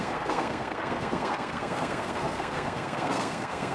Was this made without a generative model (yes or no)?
no